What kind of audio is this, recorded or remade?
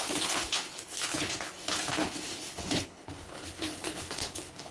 remade